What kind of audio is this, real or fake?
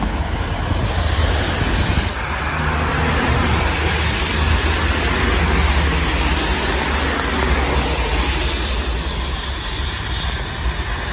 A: real